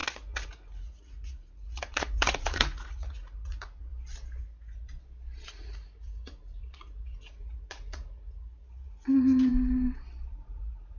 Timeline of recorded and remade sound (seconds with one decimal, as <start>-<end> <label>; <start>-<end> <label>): 0.0-3.9 remade; 3.9-4.4 recorded; 4.4-4.9 remade; 4.9-5.5 recorded; 5.5-9.5 remade; 9.5-10.3 recorded; 10.3-11.0 remade